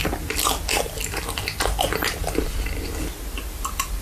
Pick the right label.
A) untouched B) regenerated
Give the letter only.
A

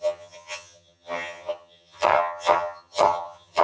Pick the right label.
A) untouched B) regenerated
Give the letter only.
B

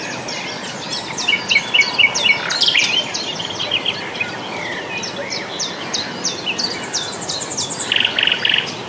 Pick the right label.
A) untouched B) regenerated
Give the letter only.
A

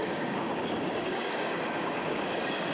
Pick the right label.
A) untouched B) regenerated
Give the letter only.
B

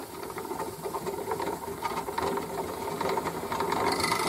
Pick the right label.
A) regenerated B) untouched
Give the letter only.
B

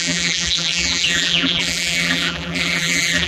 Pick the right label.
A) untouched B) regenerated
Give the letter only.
B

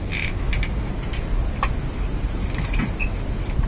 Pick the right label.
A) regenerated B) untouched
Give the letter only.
B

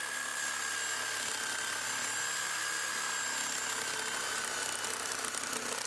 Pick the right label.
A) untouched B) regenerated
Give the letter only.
A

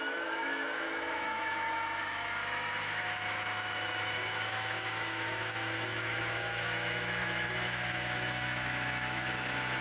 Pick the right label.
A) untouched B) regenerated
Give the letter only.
B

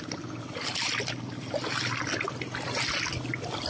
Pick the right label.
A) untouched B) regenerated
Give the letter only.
A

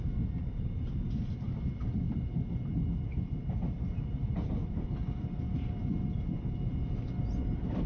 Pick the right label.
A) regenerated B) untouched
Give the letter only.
B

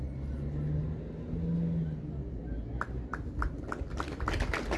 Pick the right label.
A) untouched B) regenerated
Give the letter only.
A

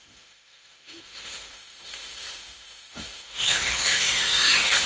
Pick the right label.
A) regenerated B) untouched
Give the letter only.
A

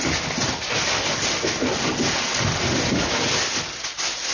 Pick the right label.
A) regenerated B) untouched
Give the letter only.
B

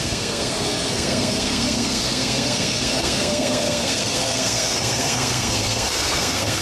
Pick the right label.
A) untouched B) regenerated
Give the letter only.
B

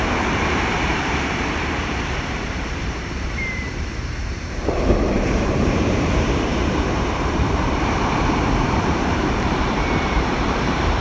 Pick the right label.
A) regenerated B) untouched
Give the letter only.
A